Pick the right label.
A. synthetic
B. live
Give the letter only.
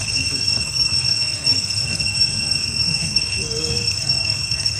A